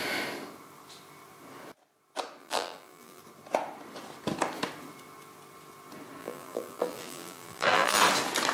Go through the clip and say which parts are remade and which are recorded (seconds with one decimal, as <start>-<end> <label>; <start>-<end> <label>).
0.0-2.4 recorded; 2.4-3.2 remade; 3.2-6.2 recorded; 6.2-8.0 remade; 8.0-8.5 recorded